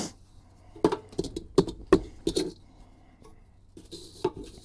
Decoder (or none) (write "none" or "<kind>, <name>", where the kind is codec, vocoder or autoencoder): none